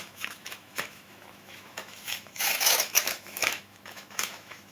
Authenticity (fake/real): fake